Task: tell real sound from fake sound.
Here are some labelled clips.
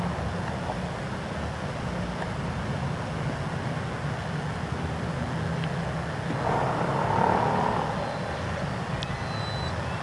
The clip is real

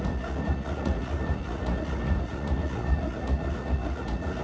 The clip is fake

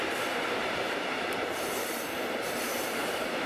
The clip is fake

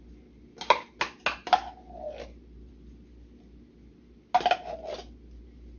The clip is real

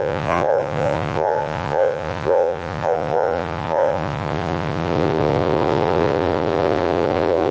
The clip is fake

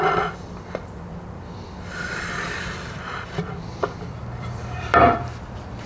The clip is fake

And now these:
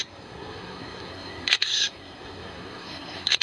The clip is fake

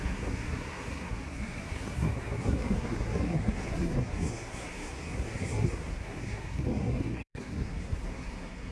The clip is fake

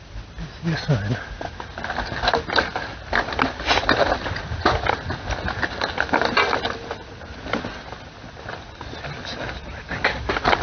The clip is real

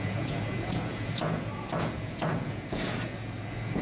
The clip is fake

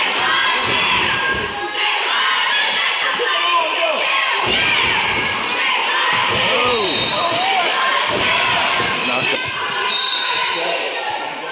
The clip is fake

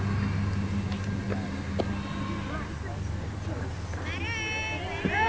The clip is real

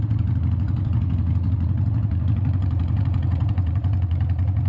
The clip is fake